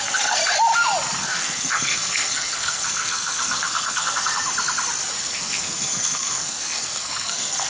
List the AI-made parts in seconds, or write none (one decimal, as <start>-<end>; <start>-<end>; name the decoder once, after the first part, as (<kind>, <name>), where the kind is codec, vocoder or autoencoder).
0.0-0.4 (codec, SNAC); 1.2-4.4; 5.2-7.7